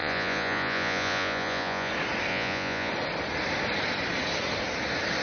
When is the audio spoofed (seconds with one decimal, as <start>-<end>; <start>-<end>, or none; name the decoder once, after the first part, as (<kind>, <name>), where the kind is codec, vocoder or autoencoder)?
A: 0.0-1.9 (vocoder, Vocos); 2.3-2.9

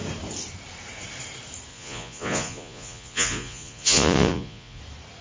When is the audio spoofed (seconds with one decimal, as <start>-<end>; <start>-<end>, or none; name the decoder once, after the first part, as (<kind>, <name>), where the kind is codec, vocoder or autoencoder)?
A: 1.7-4.8 (vocoder, Vocos)

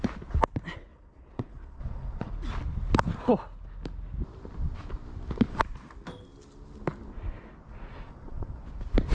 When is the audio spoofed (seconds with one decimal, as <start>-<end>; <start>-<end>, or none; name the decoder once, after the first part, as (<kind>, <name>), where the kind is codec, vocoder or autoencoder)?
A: 0.9-2.3 (vocoder, Vocos); 7.7-8.6

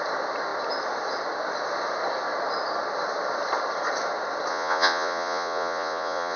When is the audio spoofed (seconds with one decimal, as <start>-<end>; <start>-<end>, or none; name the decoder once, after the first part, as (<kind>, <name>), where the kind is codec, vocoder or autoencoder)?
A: 4.5-6.4 (vocoder, Vocos)

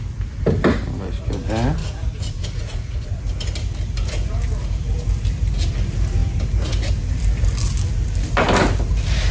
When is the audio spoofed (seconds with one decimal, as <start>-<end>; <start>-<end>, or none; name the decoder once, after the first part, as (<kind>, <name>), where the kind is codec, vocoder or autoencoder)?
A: 1.8-3.2 (vocoder, Vocos)